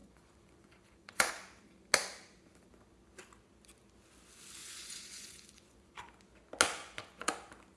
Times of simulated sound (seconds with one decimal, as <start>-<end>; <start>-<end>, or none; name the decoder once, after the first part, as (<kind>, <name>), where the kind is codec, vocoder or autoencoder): 0.0-1.3 (vocoder, Vocos); 4.6-6.1; 6.7-7.3